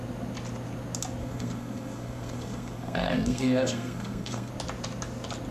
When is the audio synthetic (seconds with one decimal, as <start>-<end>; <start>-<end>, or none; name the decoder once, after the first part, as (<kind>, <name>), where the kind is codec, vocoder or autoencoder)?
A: 1.2-4.5 (codec, SNAC)